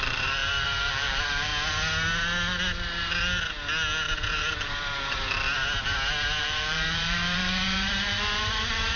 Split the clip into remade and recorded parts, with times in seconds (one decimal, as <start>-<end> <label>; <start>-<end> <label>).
0.0-1.5 remade; 1.5-6.4 recorded; 6.4-9.0 remade